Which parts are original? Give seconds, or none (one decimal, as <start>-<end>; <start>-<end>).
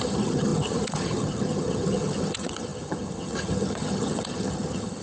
none